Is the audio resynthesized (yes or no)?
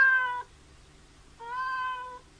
no